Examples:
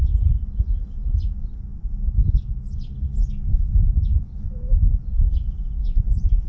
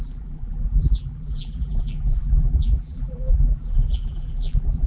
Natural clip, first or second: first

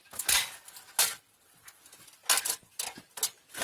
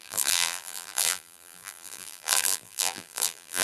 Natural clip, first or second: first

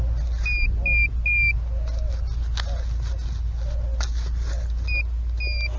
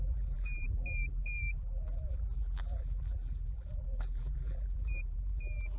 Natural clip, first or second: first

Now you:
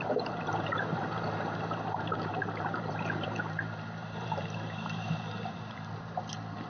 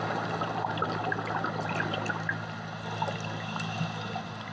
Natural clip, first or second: second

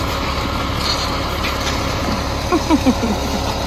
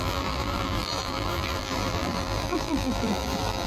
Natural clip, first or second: first